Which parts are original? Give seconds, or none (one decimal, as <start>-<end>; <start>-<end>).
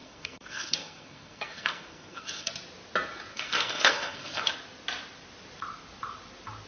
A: 2.5-3.3; 4.5-6.7